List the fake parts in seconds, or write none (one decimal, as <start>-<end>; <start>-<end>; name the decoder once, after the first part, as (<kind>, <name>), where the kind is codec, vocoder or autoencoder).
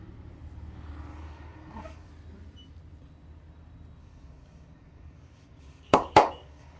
1.1-2.1 (codec, DAC); 4.0-6.8